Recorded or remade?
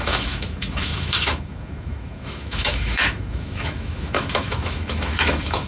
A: remade